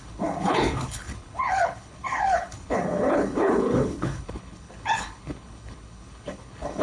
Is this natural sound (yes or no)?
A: no